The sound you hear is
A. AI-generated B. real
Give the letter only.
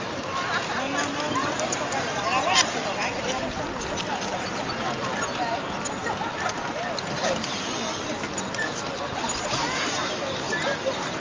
B